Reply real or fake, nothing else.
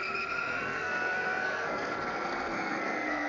fake